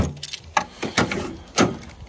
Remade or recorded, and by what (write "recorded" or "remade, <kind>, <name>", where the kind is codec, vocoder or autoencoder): recorded